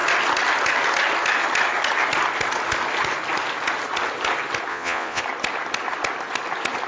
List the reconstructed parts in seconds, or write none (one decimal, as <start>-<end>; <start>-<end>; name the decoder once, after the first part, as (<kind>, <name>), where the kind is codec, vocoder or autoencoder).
4.7-5.2 (vocoder, Vocos)